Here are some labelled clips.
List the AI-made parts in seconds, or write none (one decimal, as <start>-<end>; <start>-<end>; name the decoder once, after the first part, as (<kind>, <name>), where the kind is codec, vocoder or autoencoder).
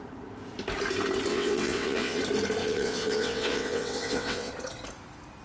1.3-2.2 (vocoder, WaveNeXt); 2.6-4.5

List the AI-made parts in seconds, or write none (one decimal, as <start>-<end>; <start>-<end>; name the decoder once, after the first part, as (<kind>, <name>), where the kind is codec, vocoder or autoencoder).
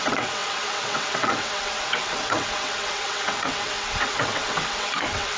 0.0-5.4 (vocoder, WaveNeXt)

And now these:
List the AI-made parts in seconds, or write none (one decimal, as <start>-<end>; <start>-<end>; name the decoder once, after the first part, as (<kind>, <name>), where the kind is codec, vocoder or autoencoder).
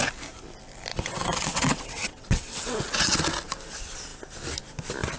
0.9-3.2 (vocoder, WaveNeXt)